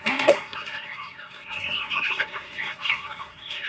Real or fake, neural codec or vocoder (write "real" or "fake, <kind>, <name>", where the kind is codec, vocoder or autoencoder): fake, codec, SNAC